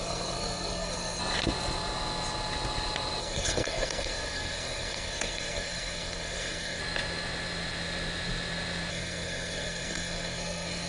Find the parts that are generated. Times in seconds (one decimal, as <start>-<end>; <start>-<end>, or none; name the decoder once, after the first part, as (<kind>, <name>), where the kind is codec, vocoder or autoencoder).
0.0-1.2 (codec, SNAC); 3.2-6.8; 8.9-10.9